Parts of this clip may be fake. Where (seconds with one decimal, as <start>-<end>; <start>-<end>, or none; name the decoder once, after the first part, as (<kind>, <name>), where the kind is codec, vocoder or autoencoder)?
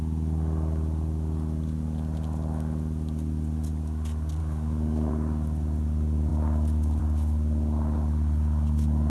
4.4-5.1 (codec, DAC)